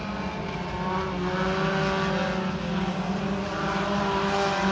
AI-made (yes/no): no